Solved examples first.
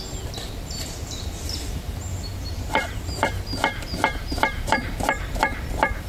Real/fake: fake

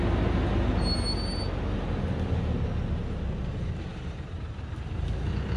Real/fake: real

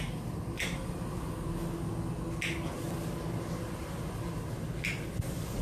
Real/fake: real